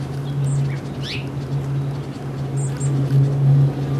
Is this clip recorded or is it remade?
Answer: recorded